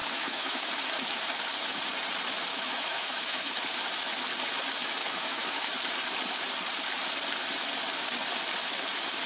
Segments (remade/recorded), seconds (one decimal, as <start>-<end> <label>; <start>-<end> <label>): 0.0-0.7 remade; 0.7-2.5 recorded; 2.5-3.6 remade; 3.6-5.0 recorded; 5.0-5.7 remade; 5.7-9.3 recorded